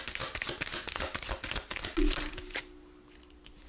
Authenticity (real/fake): real